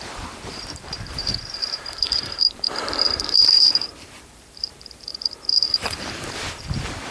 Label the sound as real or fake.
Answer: fake